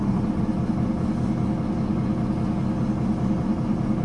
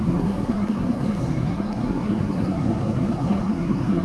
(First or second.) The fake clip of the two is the second